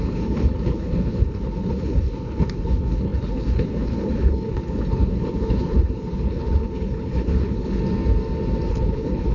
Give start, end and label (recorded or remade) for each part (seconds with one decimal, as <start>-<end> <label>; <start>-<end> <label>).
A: 0.0-7.8 remade; 7.8-8.7 recorded; 8.7-9.3 remade